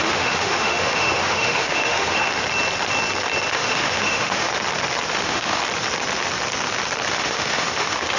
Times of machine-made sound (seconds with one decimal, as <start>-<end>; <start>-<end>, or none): 0.0-2.2; 3.5-4.5; 5.1-5.6; 7.1-8.2